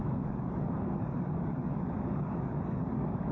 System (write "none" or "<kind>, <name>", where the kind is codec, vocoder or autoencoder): codec, DAC